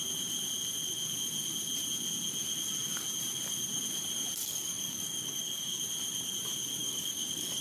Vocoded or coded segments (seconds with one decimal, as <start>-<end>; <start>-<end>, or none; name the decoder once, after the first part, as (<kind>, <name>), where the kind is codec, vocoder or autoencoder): 4.4-5.8 (codec, DAC); 6.8-7.6